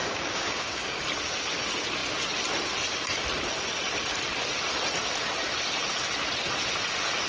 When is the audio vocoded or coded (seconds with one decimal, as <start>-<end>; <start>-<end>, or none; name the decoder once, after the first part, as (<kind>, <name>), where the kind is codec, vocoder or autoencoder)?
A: 0.0-1.0 (codec, DAC)